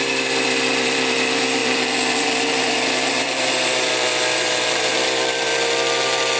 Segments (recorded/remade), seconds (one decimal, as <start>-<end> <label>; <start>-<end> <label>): 0.0-5.5 remade; 5.5-6.4 recorded